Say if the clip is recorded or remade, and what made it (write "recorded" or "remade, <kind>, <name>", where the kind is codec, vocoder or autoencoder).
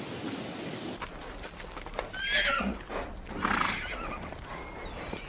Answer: recorded